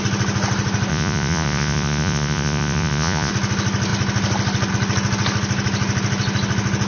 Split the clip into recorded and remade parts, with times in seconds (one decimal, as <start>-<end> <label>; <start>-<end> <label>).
0.0-0.9 recorded; 0.9-3.3 remade; 3.3-6.9 recorded